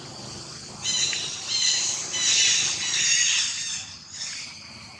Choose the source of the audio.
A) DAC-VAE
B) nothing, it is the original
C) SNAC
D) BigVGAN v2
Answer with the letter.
B